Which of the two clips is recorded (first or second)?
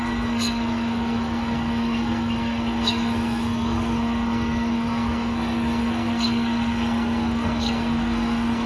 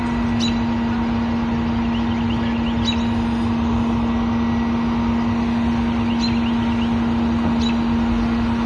second